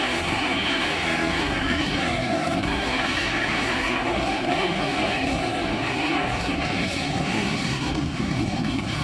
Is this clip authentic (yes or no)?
no